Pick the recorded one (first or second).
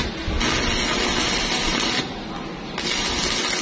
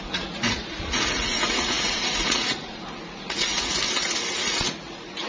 first